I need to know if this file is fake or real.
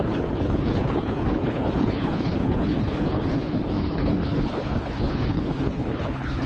fake